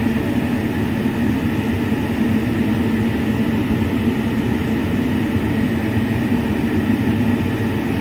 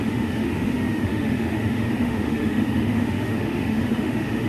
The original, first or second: first